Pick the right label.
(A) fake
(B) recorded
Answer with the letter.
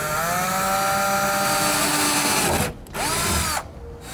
B